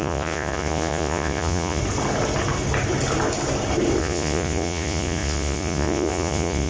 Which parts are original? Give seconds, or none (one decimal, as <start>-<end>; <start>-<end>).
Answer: 1.8-4.0